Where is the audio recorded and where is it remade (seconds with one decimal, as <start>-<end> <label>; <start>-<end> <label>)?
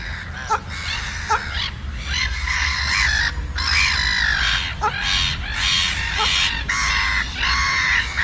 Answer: 0.0-2.2 recorded; 2.2-2.8 remade; 2.8-8.2 recorded